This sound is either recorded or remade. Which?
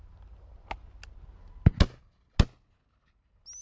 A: recorded